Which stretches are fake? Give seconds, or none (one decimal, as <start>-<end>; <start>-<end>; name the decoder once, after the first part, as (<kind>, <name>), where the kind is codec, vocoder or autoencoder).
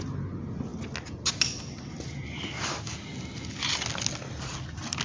none